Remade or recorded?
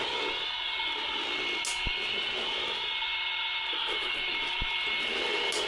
recorded